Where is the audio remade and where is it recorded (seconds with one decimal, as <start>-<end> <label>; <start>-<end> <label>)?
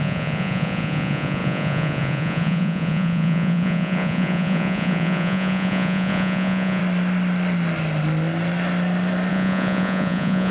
0.0-6.8 remade; 6.8-9.3 recorded; 9.3-10.5 remade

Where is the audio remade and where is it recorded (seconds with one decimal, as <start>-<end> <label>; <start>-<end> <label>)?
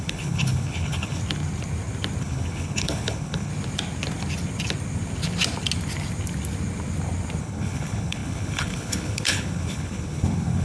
0.0-1.2 remade; 1.2-2.2 recorded; 2.2-3.5 remade; 3.5-7.4 recorded; 7.4-10.6 remade